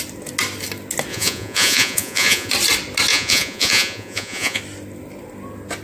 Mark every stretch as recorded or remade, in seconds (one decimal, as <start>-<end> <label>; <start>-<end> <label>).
0.0-1.1 recorded; 1.1-2.5 remade; 2.5-3.1 recorded; 3.1-4.6 remade; 4.6-5.8 recorded